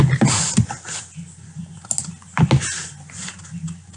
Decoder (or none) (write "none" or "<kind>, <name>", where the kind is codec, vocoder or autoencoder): none